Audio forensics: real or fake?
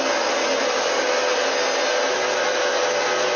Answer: real